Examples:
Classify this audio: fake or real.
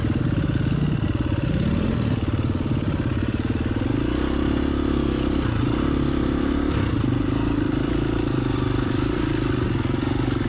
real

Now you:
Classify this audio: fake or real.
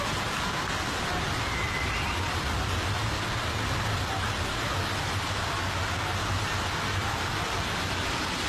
real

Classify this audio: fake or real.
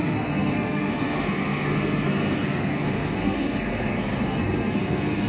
fake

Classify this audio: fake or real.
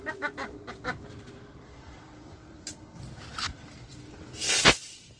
real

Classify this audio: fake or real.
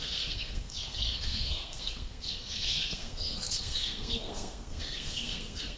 fake